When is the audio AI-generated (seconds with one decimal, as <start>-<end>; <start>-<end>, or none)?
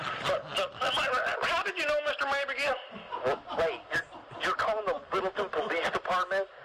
none